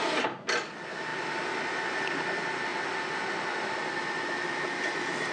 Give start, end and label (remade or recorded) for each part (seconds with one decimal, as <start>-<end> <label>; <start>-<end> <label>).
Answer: 0.0-5.3 recorded